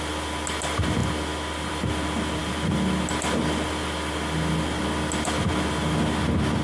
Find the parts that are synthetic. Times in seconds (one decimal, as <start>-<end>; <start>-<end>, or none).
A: none